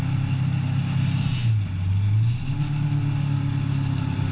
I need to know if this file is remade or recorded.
recorded